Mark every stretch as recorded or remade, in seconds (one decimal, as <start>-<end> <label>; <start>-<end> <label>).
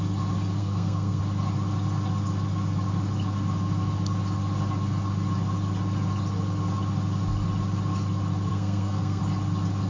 0.0-0.6 recorded; 0.6-1.2 remade; 1.2-8.5 recorded; 8.5-9.2 remade; 9.2-9.9 recorded